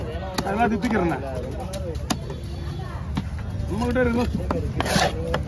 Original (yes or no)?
yes